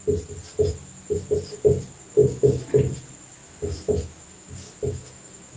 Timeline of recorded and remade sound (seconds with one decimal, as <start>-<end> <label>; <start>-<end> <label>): 0.0-2.2 recorded; 2.2-2.7 remade; 2.7-3.4 recorded; 3.4-5.6 remade